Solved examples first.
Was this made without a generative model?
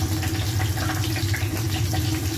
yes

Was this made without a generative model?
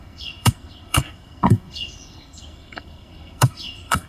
no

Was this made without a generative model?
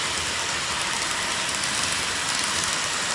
yes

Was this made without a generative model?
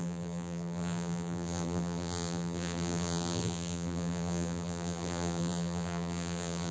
no